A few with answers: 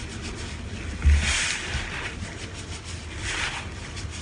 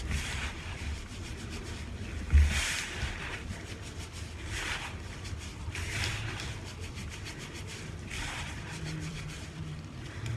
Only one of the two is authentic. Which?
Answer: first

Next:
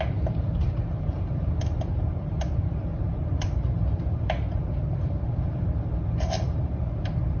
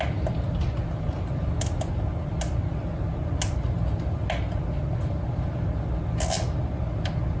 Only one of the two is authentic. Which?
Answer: second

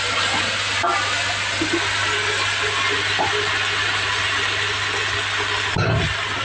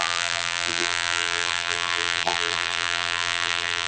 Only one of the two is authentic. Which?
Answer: first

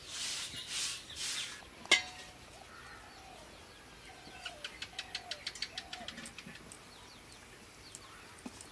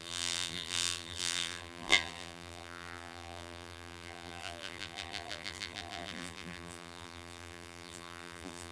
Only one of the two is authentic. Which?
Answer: first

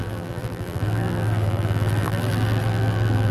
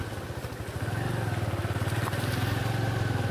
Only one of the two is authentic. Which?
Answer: second